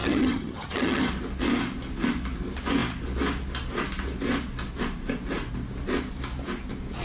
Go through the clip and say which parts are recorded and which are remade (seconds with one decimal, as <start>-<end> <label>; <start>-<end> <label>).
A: 0.0-1.1 remade; 1.1-7.0 recorded